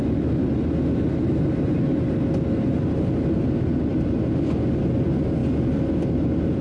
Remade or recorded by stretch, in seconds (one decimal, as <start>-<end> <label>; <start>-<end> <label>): 0.0-6.6 recorded